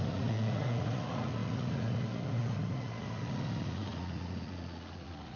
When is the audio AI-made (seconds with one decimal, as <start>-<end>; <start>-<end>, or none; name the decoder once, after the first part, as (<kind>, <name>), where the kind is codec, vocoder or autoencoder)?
0.0-5.4 (vocoder, Vocos)